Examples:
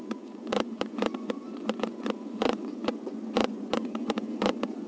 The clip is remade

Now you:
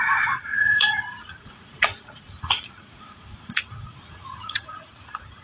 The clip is remade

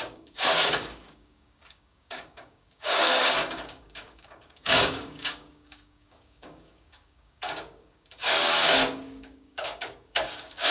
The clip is remade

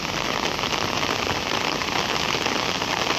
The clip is recorded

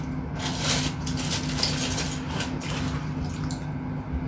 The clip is recorded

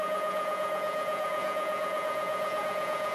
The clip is remade